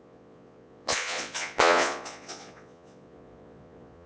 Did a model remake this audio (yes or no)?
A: yes